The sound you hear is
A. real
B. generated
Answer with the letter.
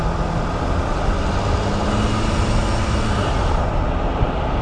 A